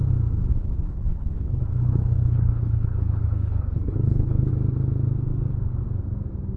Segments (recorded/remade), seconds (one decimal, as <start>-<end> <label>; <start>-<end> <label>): 0.0-0.5 recorded; 0.5-4.5 remade; 4.5-6.6 recorded